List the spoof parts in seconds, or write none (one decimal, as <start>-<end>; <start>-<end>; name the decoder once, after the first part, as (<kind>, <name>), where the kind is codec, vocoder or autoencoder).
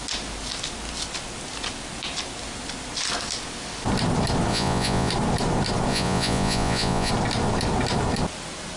4.5-5.1 (vocoder, Vocos); 5.9-7.1